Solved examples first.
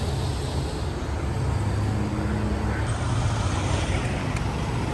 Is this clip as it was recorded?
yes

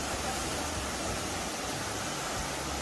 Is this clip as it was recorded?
yes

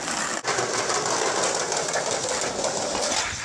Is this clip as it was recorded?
yes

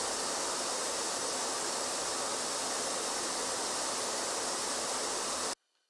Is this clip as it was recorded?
yes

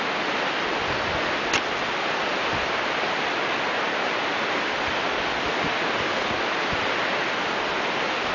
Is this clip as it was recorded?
yes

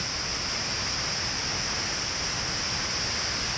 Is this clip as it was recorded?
yes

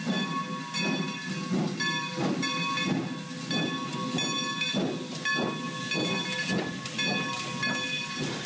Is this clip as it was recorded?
yes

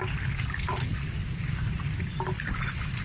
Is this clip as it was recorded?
yes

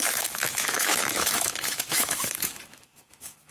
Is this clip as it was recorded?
no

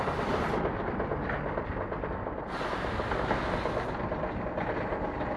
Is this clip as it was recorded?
yes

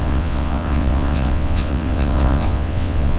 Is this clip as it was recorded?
no